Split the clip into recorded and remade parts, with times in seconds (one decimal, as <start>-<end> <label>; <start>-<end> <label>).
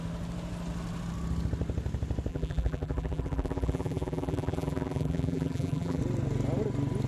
0.0-2.3 recorded; 2.3-6.0 remade; 6.0-7.1 recorded